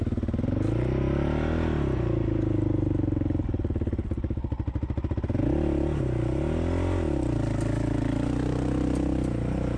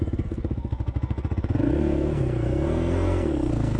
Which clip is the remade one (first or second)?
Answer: second